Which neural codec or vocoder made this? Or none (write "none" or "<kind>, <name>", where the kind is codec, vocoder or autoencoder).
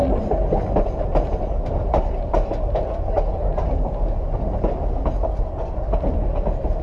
none